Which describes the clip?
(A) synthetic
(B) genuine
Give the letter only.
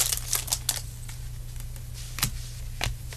B